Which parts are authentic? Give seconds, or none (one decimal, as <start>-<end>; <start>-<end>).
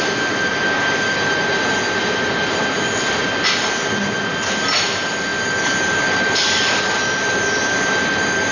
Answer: 0.0-8.5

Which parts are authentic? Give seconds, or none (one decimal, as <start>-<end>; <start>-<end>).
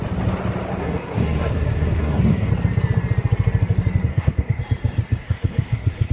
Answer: 0.0-0.8; 2.5-4.1; 4.6-5.2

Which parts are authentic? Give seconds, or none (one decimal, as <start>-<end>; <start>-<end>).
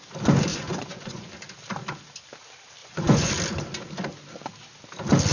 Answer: 0.0-0.5; 1.3-2.8; 3.3-5.3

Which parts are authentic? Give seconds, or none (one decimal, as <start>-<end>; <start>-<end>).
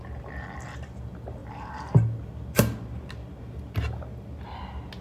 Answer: 0.0-5.0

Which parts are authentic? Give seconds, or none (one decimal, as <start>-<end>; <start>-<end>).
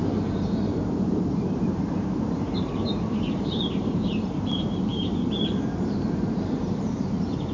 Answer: none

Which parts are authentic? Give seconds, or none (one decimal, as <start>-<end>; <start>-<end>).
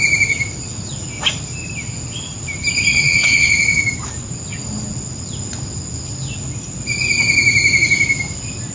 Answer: 0.0-2.9; 3.8-8.7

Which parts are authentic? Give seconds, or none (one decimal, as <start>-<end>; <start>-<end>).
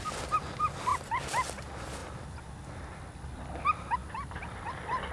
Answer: 0.0-5.1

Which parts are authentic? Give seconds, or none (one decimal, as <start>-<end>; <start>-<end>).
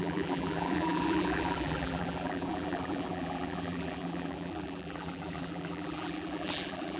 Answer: none